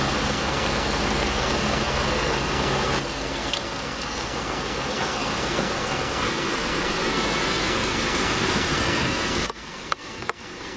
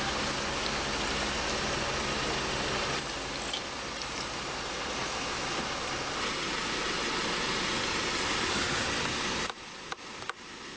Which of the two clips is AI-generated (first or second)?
first